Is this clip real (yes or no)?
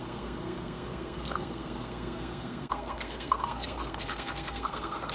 no